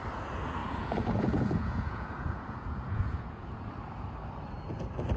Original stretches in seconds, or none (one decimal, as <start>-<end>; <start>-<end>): 0.0-0.6; 3.7-5.2